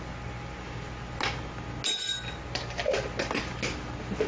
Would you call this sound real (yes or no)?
yes